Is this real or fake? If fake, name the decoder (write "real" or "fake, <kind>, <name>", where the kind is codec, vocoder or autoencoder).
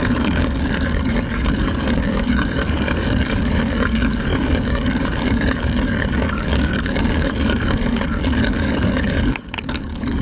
fake, codec, DAC